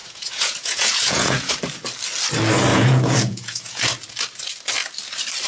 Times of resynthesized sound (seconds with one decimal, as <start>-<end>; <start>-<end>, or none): 0.0-1.5; 2.7-3.9